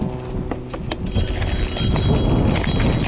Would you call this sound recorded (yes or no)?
yes